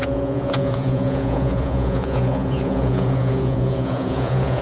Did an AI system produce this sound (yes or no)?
yes